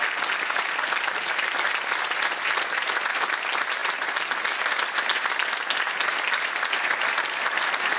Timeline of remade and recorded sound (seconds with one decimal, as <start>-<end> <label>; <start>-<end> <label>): 0.0-3.8 recorded; 3.8-4.8 remade; 4.8-8.0 recorded